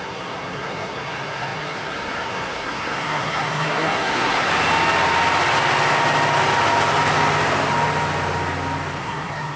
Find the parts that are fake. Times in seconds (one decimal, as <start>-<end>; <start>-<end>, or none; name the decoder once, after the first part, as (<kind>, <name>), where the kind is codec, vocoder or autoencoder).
0.0-4.5 (codec, SNAC); 9.0-9.6